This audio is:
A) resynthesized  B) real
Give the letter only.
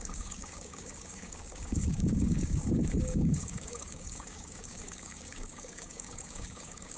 A